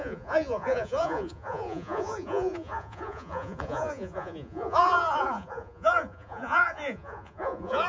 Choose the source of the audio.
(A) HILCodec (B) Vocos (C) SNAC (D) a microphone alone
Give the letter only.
B